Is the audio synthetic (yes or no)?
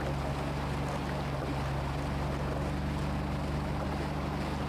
no